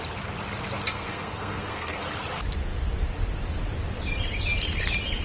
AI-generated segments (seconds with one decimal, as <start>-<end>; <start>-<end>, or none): 0.9-2.0